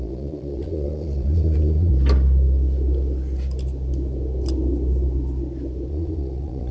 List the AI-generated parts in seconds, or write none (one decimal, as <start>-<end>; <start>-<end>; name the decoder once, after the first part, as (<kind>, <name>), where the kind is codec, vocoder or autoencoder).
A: 0.0-1.9 (vocoder, Vocos); 5.9-6.7